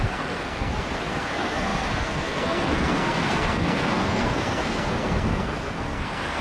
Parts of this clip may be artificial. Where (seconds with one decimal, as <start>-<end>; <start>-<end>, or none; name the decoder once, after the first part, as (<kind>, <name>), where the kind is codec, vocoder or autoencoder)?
0.0-6.4 (codec, SNAC)